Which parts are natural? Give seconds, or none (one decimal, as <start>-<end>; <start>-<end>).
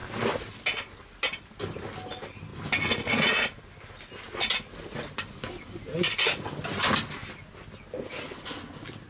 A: 0.0-9.1